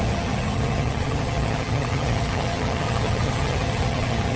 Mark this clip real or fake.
fake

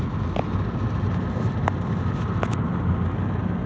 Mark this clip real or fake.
real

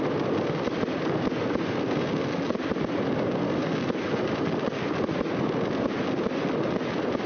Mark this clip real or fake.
real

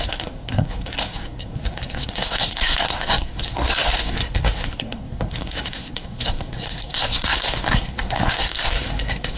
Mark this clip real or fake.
fake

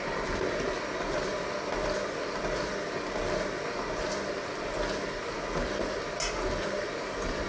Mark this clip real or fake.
real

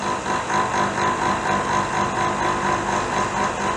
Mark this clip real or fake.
real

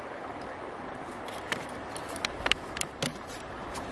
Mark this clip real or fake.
fake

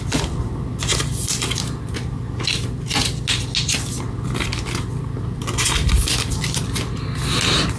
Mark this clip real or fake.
real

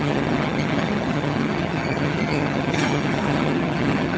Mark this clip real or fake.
fake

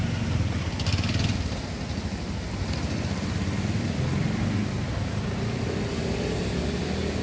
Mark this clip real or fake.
real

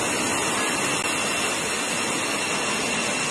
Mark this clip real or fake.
real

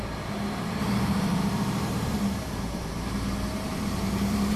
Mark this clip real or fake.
fake